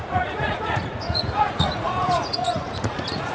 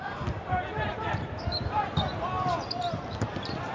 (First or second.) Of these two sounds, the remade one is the first